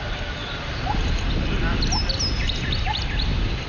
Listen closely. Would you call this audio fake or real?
real